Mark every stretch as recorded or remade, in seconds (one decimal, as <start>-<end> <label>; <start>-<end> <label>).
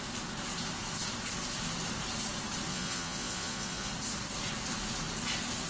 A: 0.0-2.7 recorded; 2.7-3.9 remade; 3.9-5.7 recorded